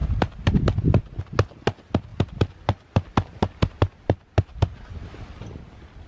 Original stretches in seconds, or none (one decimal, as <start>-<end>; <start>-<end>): 0.0-6.1